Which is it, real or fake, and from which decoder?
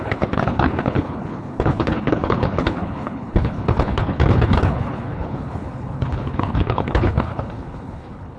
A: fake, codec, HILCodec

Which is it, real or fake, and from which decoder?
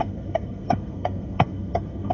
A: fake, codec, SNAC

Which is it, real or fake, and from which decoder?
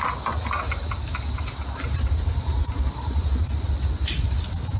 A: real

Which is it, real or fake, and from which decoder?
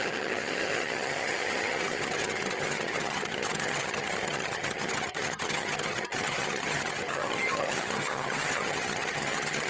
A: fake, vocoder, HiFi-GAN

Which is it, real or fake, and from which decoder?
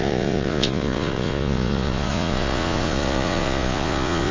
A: fake, vocoder, Vocos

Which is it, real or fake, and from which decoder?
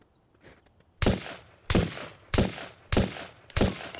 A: real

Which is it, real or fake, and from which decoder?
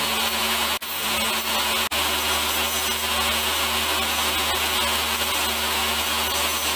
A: real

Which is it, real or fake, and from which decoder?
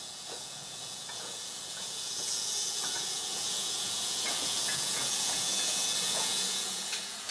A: fake, vocoder, Vocos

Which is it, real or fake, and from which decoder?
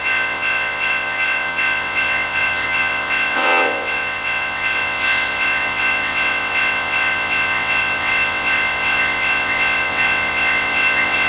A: fake, vocoder, WaveNeXt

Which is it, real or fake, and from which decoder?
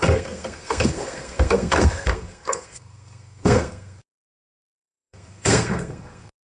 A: fake, codec, SNAC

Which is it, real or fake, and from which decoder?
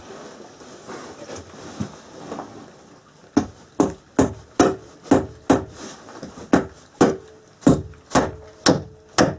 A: real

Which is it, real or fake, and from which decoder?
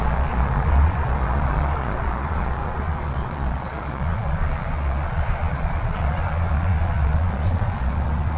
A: fake, vocoder, Vocos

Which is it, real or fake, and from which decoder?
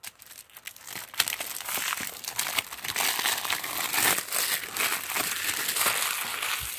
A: real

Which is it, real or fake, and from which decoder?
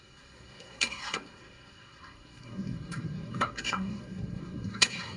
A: fake, codec, SNAC